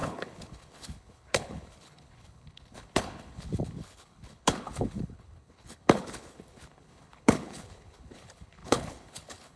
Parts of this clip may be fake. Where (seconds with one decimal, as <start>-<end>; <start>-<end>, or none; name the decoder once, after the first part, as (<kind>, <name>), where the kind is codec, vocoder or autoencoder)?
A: 0.0-9.6 (codec, HILCodec)